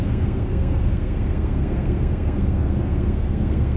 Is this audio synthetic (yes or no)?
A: yes